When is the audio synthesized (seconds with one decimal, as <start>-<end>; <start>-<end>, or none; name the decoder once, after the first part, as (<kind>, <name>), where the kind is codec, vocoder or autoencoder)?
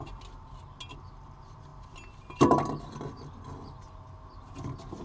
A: none